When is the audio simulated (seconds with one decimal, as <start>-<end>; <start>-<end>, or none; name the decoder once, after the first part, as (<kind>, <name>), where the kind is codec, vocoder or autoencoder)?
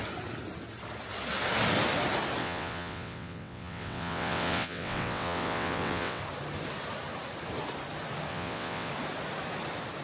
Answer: 2.4-6.2 (vocoder, WaveNeXt); 8.3-8.9